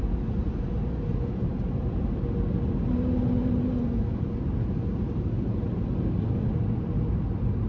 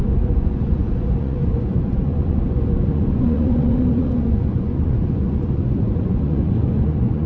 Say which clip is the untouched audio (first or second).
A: first